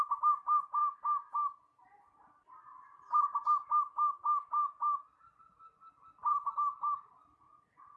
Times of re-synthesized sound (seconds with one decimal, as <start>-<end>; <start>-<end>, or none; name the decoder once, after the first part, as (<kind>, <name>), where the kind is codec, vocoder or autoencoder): none